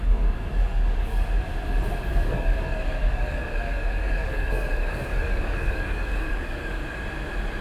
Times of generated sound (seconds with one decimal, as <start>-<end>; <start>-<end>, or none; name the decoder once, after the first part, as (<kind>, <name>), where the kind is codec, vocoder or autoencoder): 0.0-1.5 (codec, DAC); 2.1-6.8